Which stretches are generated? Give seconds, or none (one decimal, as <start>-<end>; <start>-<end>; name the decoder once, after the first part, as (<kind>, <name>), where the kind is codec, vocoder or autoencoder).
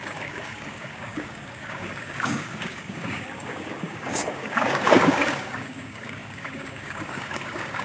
0.0-7.8 (codec, DAC)